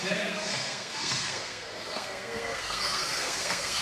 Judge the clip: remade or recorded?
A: remade